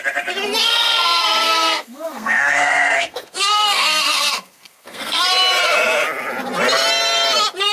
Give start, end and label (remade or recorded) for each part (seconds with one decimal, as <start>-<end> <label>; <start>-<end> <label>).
0.0-0.6 recorded; 0.6-5.2 remade; 5.2-7.7 recorded